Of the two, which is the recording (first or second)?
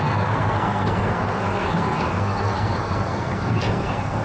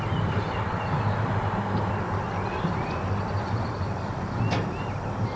second